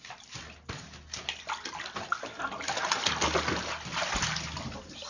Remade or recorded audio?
recorded